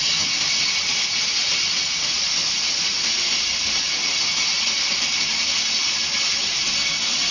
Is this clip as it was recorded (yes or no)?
yes